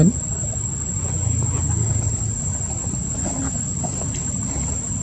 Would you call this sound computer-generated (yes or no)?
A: no